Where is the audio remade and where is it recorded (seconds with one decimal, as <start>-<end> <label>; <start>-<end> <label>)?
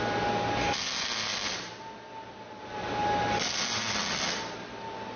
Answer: 0.0-5.2 recorded